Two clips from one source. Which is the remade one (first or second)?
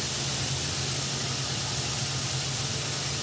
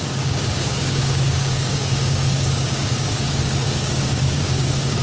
second